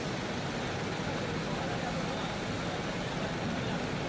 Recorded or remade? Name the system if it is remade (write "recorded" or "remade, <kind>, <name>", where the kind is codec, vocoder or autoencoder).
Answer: recorded